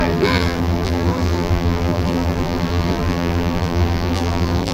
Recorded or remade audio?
remade